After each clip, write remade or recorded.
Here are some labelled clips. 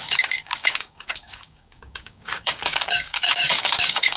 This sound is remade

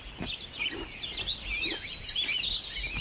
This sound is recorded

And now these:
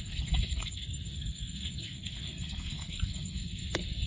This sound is remade